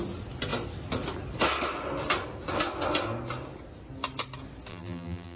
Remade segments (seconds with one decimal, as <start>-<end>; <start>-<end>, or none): 4.7-5.4